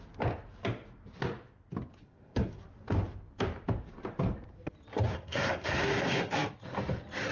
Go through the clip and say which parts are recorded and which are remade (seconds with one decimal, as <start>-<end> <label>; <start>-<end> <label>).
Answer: 0.0-2.0 recorded; 2.0-2.6 remade; 2.6-5.1 recorded; 5.1-6.3 remade; 6.3-7.3 recorded